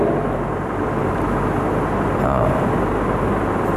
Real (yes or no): yes